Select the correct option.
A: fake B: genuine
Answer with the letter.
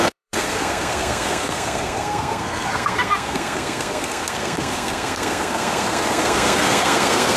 A